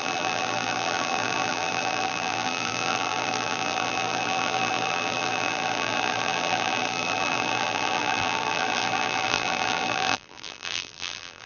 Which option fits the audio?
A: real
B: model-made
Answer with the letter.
B